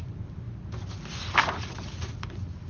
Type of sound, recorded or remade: recorded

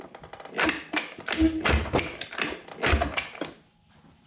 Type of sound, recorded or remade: recorded